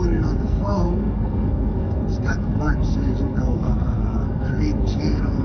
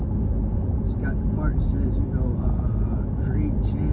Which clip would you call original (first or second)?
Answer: second